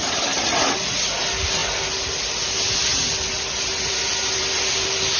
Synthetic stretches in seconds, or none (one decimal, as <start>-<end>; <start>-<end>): none